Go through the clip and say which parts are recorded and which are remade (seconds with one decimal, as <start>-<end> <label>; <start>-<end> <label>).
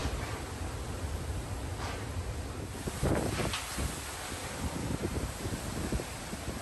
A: 0.0-6.6 recorded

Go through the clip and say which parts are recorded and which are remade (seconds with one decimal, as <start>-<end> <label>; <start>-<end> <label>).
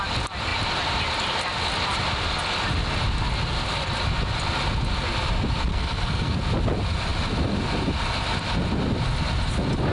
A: 0.0-5.7 recorded; 5.7-6.4 remade; 6.4-9.9 recorded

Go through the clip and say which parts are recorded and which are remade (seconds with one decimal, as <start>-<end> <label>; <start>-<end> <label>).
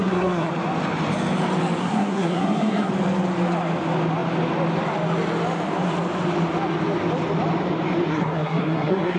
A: 0.0-0.5 remade; 0.5-1.8 recorded; 1.8-2.9 remade; 2.9-8.1 recorded; 8.1-9.2 remade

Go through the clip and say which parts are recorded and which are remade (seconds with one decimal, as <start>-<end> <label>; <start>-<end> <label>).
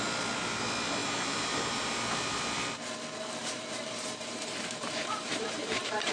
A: 0.0-1.0 recorded; 1.0-1.9 remade; 1.9-3.4 recorded; 3.4-6.1 remade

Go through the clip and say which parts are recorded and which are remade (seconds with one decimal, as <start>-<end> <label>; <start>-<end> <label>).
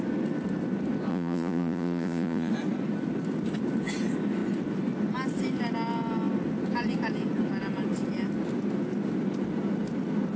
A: 0.0-1.1 recorded; 1.1-2.5 remade; 2.5-10.4 recorded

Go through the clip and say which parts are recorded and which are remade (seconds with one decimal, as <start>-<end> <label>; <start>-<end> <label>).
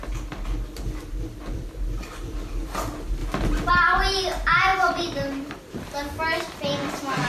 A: 0.0-7.3 recorded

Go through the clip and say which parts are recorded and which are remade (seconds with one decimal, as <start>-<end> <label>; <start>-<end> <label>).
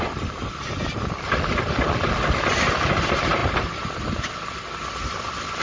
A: 0.0-5.6 recorded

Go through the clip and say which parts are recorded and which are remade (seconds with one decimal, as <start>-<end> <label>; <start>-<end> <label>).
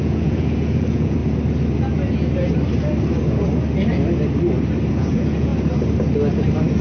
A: 0.0-1.2 remade; 1.2-4.9 recorded; 4.9-5.5 remade; 5.5-6.8 recorded